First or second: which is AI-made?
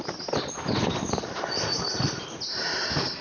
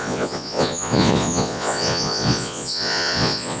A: second